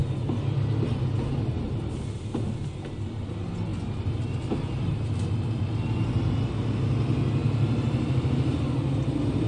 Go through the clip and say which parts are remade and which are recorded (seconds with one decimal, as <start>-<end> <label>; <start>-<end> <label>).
0.0-9.5 recorded